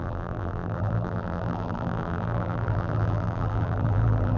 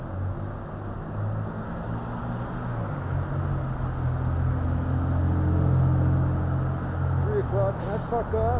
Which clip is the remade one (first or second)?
first